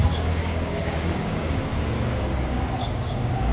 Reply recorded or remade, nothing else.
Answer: remade